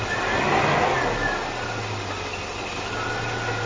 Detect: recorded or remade recorded